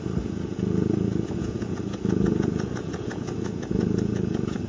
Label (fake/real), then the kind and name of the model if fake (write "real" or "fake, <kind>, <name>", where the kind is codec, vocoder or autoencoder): fake, vocoder, Vocos